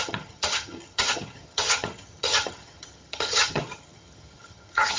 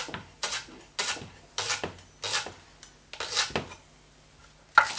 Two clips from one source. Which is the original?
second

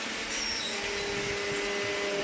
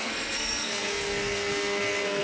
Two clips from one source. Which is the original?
first